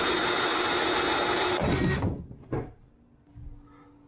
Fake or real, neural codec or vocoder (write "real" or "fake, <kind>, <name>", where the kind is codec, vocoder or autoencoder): real